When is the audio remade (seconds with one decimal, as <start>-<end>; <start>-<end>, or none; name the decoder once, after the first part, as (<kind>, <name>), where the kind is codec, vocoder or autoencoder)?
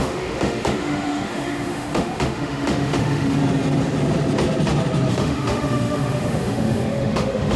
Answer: 0.0-3.4 (autoencoder, DAC-VAE); 5.1-7.6